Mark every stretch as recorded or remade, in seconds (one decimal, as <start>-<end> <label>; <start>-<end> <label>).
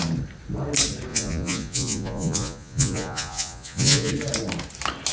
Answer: 0.0-1.1 recorded; 1.1-4.1 remade; 4.1-5.1 recorded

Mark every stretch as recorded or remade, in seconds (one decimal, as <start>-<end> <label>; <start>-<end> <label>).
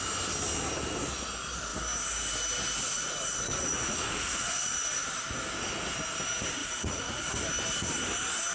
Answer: 0.0-2.9 recorded; 2.9-5.0 remade; 5.0-6.6 recorded; 6.6-7.3 remade; 7.3-8.5 recorded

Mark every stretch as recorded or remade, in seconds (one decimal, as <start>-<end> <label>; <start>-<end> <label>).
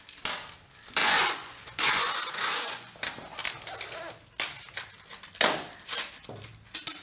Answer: 0.0-1.0 recorded; 1.0-2.9 remade; 2.9-7.0 recorded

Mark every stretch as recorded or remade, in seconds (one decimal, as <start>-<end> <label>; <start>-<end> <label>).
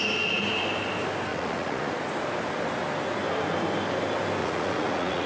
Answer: 0.0-1.3 recorded; 1.3-1.9 remade; 1.9-4.4 recorded; 4.4-5.3 remade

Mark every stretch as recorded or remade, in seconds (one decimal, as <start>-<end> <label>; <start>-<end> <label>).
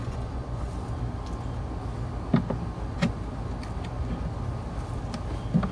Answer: 0.0-0.7 remade; 0.7-5.7 recorded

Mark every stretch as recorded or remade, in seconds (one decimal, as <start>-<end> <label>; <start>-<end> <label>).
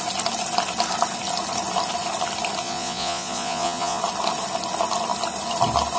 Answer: 0.0-2.6 recorded; 2.6-4.0 remade; 4.0-6.0 recorded